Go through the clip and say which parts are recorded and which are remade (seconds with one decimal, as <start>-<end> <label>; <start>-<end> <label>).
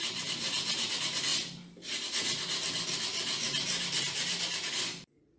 0.0-5.4 recorded